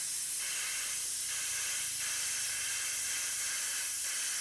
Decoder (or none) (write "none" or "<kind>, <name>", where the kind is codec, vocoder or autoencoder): vocoder, BigVGAN v2